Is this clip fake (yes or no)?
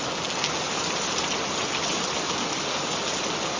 no